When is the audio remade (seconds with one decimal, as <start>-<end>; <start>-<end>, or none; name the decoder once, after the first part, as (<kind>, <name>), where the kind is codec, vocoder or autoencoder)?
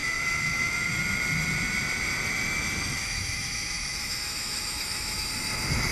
3.0-5.3 (autoencoder, DAC-VAE)